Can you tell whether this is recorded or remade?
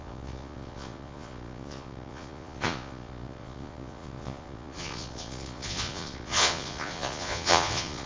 remade